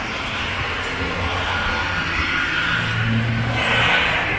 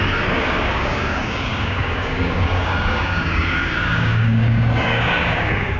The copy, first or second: second